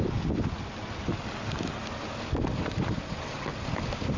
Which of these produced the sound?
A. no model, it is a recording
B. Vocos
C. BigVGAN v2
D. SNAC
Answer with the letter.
A